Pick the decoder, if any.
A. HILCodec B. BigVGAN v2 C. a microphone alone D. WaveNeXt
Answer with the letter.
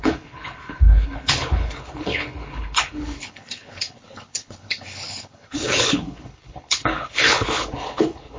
A